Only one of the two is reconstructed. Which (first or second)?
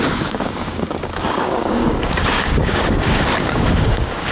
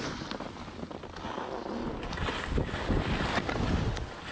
first